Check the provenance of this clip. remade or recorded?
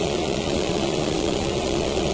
remade